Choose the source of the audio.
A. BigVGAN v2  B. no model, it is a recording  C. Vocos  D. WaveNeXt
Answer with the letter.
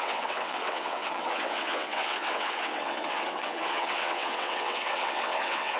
D